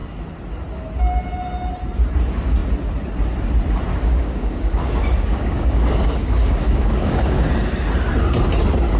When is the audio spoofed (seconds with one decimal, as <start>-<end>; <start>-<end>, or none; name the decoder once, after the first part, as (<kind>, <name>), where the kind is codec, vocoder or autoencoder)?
3.9-7.5 (codec, DAC)